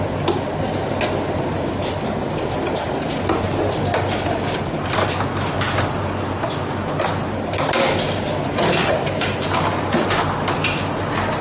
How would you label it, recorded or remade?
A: recorded